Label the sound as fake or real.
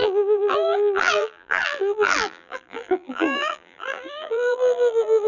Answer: fake